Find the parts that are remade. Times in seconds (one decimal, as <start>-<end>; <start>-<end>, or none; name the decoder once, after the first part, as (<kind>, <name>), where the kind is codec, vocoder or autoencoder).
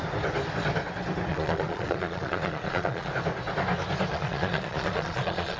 1.3-3.1 (vocoder, Vocos); 4.1-5.6